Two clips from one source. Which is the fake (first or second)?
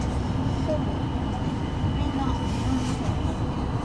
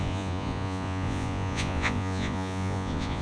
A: second